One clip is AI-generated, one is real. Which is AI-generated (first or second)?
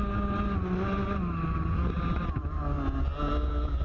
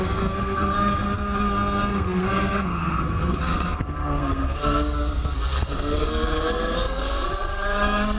second